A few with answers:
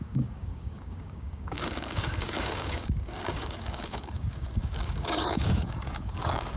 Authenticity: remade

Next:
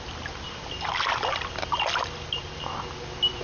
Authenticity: recorded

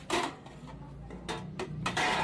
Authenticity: recorded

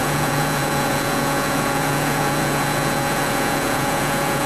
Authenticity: remade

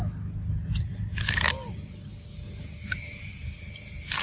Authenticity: recorded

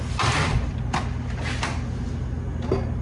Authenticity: recorded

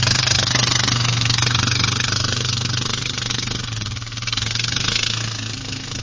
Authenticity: remade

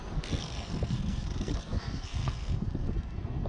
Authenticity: remade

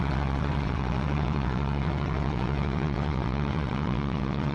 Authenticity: remade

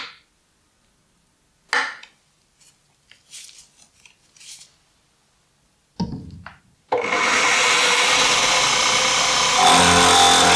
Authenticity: recorded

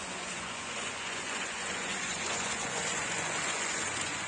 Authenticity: remade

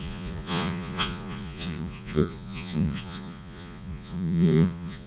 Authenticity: remade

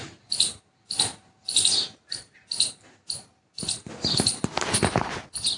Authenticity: recorded